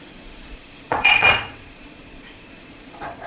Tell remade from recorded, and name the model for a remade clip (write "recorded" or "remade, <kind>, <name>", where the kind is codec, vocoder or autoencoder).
remade, vocoder, Vocos